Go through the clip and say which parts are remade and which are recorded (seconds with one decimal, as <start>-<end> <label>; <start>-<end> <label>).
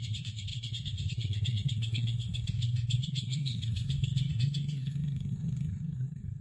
0.0-6.4 remade